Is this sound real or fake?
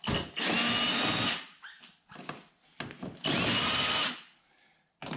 real